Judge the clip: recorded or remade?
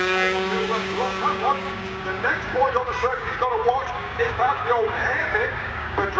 remade